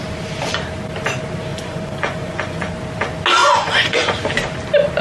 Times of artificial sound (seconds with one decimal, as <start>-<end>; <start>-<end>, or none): 1.5-2.7; 3.4-4.1